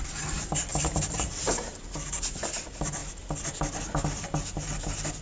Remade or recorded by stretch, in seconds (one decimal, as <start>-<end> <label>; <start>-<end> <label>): 0.0-0.7 recorded; 0.7-1.4 remade; 1.4-5.2 recorded